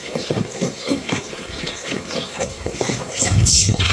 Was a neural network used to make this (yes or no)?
yes